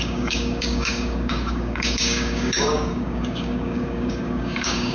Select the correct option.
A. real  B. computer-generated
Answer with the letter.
B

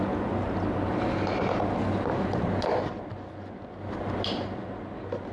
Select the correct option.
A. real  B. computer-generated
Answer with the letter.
A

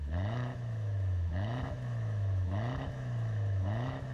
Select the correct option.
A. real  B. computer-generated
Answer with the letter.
B